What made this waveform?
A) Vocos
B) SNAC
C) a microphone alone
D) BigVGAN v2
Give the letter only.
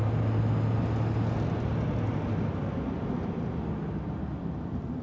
C